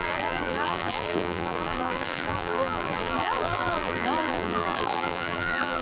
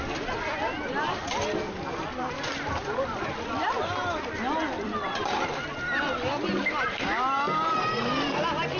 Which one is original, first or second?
second